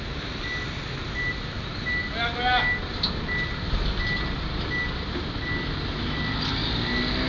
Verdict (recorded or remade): recorded